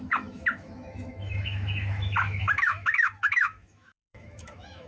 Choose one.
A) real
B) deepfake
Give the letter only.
B